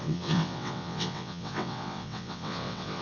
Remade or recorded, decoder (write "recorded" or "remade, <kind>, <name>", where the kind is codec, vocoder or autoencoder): remade, vocoder, WaveNeXt